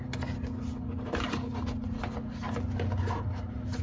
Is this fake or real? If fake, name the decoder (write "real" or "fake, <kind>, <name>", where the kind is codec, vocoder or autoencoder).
real